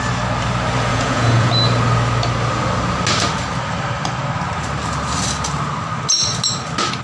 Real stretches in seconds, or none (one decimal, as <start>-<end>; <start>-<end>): 0.0-0.9; 1.5-7.0